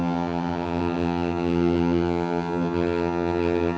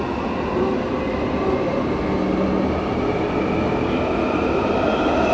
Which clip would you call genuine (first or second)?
second